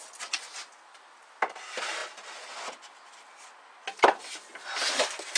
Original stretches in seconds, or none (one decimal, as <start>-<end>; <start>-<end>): 0.0-5.4